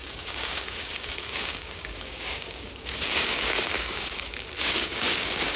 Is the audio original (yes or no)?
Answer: no